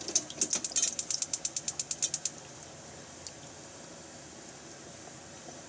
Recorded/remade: recorded